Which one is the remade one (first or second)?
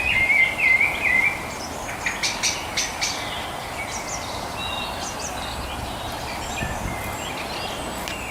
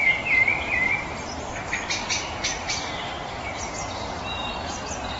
second